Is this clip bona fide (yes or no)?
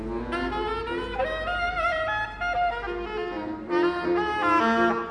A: yes